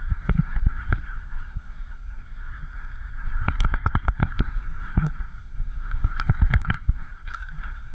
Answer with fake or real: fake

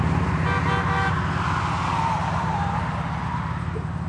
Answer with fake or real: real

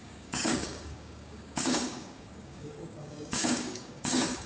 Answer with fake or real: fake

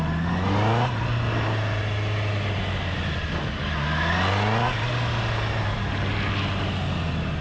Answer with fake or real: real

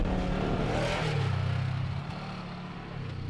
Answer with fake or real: real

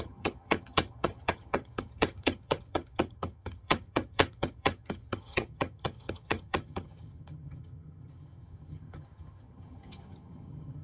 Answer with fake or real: fake